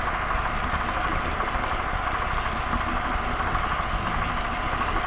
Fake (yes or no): no